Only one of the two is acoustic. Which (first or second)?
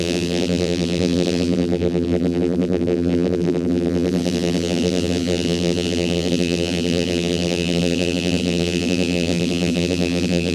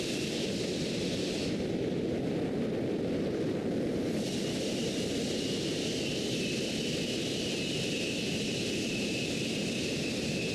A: second